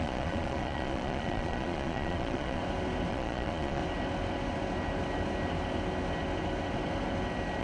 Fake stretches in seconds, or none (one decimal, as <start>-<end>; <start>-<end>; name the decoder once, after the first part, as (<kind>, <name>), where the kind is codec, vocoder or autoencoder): 0.0-2.6 (vocoder, Vocos); 3.1-3.8